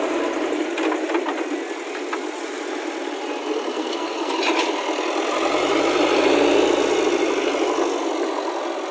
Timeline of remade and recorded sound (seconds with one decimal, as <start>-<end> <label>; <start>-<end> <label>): 0.0-3.7 recorded; 3.7-4.3 remade; 4.3-8.9 recorded